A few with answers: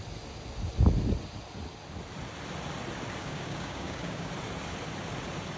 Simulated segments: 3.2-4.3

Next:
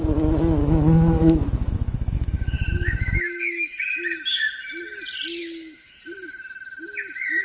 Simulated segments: 0.6-3.8; 5.4-6.0

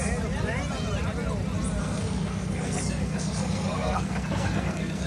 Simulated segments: 1.8-5.1

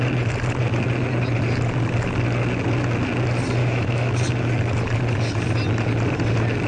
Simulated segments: 3.6-4.1

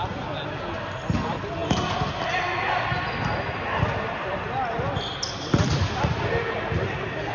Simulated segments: none

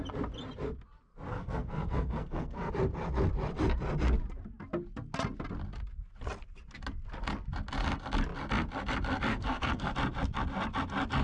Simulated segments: 1.3-2.7; 9.3-9.9